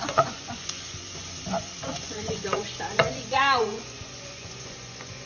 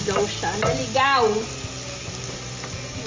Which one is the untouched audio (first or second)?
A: second